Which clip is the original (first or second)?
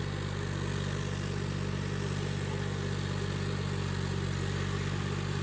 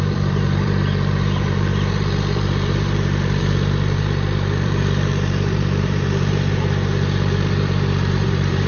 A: first